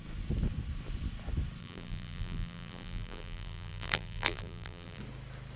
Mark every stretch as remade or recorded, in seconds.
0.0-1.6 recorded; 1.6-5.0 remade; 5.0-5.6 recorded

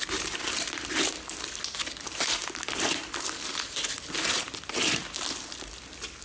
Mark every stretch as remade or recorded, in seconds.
0.0-6.2 recorded

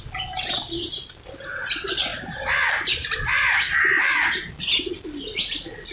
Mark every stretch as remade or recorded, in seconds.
0.0-5.9 recorded

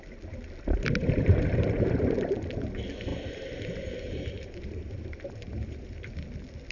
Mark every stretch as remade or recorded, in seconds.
0.0-1.0 recorded; 1.0-2.1 remade; 2.1-3.1 recorded; 3.1-6.1 remade; 6.1-6.7 recorded

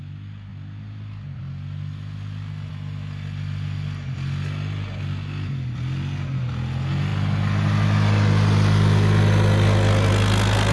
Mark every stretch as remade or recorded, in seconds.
0.0-10.7 recorded

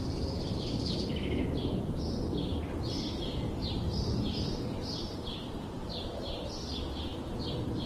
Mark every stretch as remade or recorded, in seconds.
0.0-2.5 recorded; 2.5-6.5 remade; 6.5-7.9 recorded